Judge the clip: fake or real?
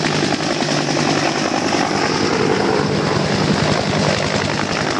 real